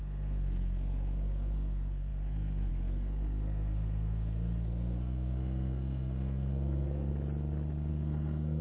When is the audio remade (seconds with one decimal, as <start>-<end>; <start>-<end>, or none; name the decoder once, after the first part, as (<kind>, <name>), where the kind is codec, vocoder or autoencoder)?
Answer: 0.0-7.1 (codec, SNAC); 7.9-8.6